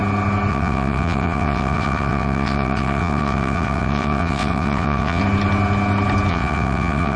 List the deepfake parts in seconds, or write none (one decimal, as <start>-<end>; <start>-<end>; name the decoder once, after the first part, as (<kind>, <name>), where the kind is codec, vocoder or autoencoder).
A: 0.5-5.2 (vocoder, WaveNeXt); 6.3-7.2